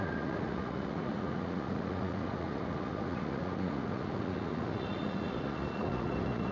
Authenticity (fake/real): fake